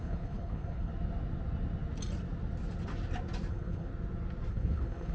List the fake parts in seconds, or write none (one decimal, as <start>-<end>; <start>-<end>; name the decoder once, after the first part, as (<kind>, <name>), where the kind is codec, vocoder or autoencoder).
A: 0.0-0.9 (codec, HILCodec); 3.5-3.9; 4.5-5.1